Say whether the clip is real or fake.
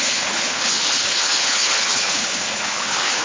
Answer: fake